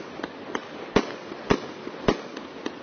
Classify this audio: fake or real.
real